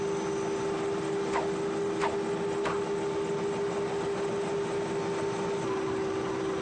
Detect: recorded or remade recorded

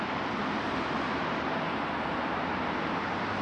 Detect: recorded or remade remade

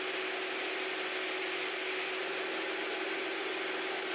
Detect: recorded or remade recorded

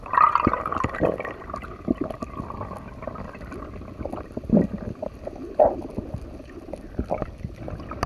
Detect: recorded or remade recorded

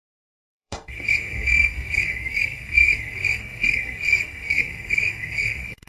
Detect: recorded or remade remade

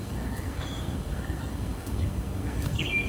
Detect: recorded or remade remade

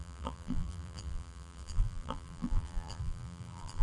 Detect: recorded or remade remade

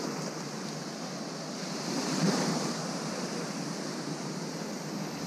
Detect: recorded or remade recorded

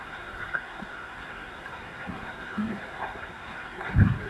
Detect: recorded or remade remade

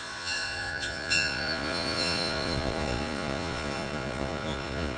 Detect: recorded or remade remade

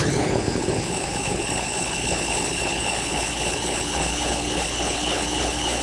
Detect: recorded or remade remade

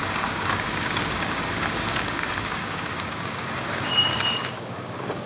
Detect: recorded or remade remade